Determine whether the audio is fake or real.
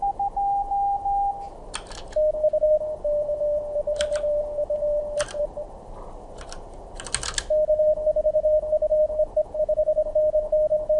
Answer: real